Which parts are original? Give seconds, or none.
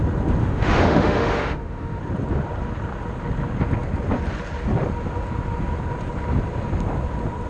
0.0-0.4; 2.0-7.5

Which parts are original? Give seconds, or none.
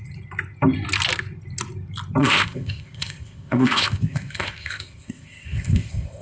0.0-2.2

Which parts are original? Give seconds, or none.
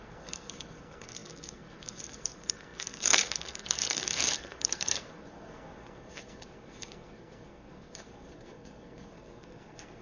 none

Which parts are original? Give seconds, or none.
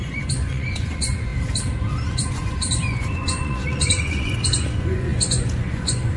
1.3-2.3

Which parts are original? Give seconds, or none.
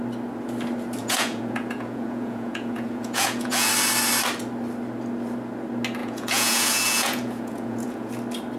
0.0-1.0; 3.7-6.0; 8.1-8.6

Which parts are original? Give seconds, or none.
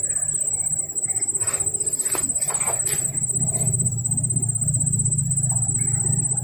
0.0-6.4